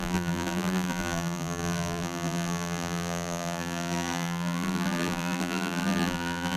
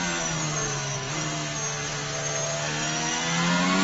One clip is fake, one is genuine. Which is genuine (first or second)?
second